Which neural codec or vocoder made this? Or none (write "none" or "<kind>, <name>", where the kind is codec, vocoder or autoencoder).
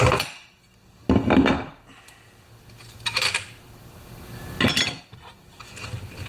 none